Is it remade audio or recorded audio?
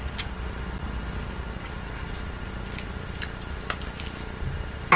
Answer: recorded